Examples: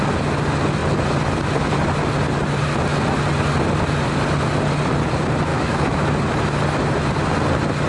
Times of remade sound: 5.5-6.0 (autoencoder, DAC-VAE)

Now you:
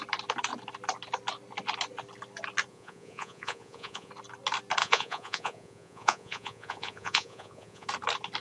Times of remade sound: 2.7-4.1 (vocoder, Vocos); 4.8-7.9

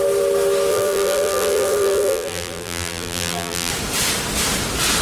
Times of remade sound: 0.7-3.7 (vocoder, BigVGAN v2)

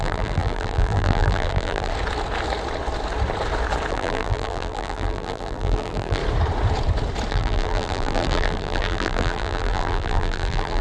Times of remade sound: 0.0-1.9 (vocoder, BigVGAN v2); 3.9-6.2; 7.3-10.8

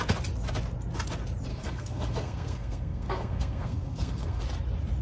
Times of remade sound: 1.5-4.4 (codec, SNAC)

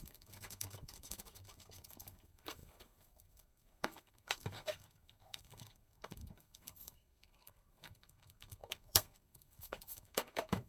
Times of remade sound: 0.0-10.7 (codec, SNAC)

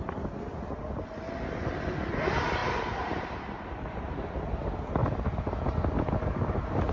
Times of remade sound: none

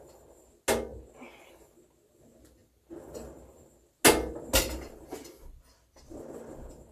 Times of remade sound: none